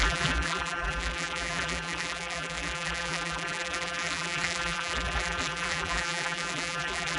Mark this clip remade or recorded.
remade